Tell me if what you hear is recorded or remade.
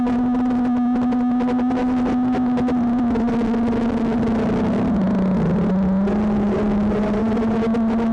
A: recorded